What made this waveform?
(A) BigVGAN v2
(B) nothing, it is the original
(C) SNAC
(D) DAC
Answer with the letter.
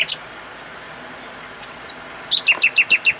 B